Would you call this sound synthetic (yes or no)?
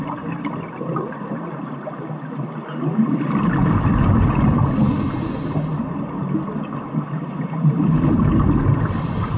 no